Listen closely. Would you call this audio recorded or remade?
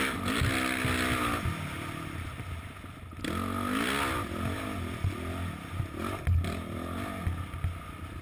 recorded